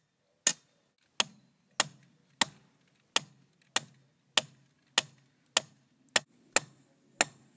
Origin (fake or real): real